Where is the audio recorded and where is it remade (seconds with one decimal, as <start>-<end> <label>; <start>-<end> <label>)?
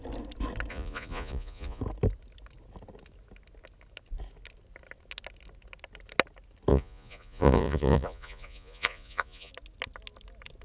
0.0-0.7 recorded; 0.7-1.8 remade; 1.8-6.7 recorded; 6.7-9.5 remade; 9.5-10.6 recorded